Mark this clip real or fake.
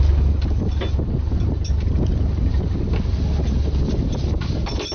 real